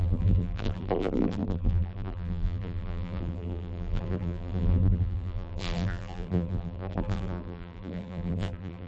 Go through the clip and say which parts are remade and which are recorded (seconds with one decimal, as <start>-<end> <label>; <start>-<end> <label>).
0.0-8.9 remade